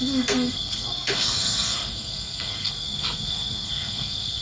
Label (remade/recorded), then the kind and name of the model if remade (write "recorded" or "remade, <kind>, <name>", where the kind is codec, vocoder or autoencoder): remade, codec, SNAC